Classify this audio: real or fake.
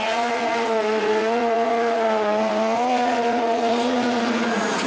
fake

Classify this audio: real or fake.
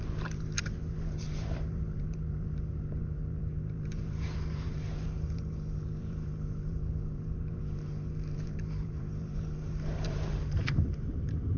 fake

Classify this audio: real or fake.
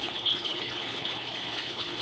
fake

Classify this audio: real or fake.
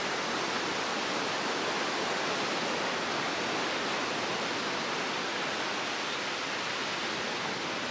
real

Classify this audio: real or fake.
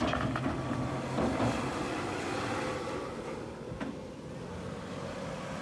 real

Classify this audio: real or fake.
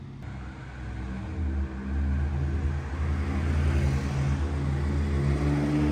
real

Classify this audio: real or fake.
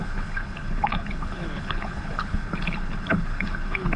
fake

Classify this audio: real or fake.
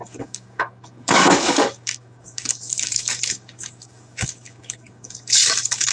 fake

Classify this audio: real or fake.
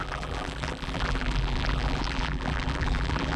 fake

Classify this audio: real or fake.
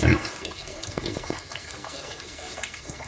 fake